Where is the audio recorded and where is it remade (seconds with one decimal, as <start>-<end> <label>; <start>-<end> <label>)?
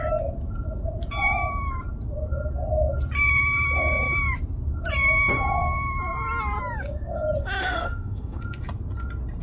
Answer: 0.0-7.6 recorded; 7.6-8.4 remade; 8.4-9.4 recorded